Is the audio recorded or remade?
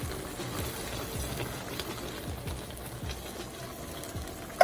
recorded